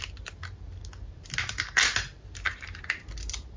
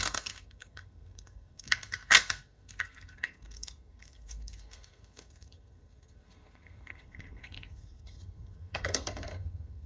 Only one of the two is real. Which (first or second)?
first